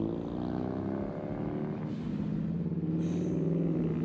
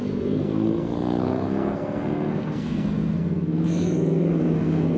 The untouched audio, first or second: first